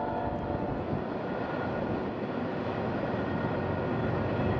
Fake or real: real